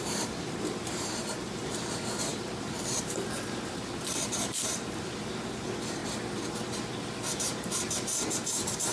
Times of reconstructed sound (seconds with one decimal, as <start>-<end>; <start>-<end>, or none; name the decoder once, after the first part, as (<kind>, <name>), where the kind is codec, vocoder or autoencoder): 0.0-6.0 (vocoder, BigVGAN v2); 7.3-8.9